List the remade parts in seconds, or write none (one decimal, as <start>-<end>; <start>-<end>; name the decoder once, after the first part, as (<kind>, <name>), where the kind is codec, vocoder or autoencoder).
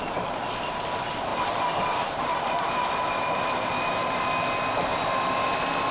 1.3-4.2 (vocoder, BigVGAN v2)